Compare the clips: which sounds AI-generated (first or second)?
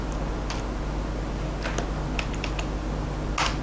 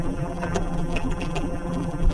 second